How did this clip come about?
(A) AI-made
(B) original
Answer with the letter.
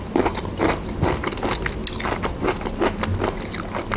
B